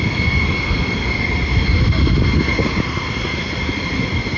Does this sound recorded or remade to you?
recorded